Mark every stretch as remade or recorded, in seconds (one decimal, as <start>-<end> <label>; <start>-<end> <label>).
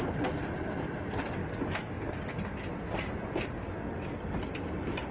0.0-1.4 recorded; 1.4-2.1 remade; 2.1-5.1 recorded